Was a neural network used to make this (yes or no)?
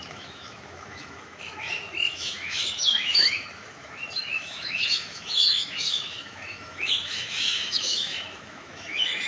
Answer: yes